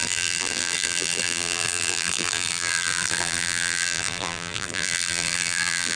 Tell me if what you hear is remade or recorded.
remade